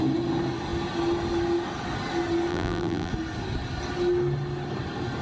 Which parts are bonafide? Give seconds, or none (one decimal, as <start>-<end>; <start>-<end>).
0.0-2.5; 3.1-5.2